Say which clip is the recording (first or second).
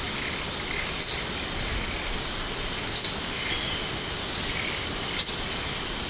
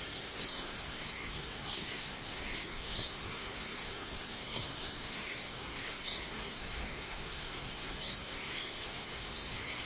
first